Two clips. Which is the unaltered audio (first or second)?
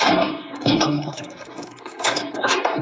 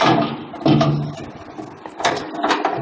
second